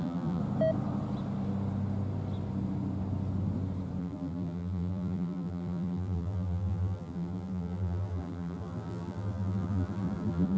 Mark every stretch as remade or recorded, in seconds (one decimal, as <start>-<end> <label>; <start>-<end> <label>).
0.0-0.4 remade; 0.4-4.0 recorded; 4.0-10.6 remade